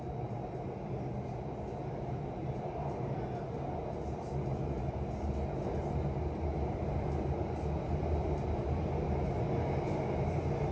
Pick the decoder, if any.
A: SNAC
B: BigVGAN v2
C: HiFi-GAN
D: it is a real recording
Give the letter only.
D